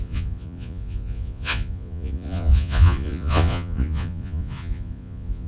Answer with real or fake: fake